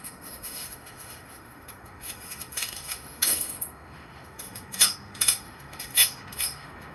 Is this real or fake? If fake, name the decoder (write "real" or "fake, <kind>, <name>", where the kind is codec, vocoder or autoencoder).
fake, autoencoder, DAC-VAE